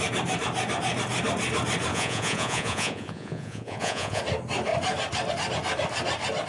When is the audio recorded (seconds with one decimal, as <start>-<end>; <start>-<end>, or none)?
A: 0.0-1.9; 4.2-6.5